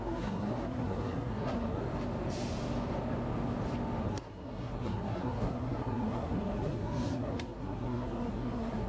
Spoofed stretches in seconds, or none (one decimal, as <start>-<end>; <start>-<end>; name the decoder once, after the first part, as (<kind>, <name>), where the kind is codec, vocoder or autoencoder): 0.0-1.8 (codec, SNAC); 4.0-8.9